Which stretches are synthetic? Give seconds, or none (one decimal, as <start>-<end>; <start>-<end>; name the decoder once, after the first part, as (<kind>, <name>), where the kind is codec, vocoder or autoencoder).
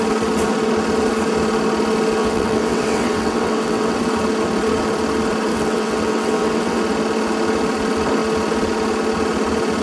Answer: 2.2-4.0 (vocoder, WaveNeXt); 5.5-6.8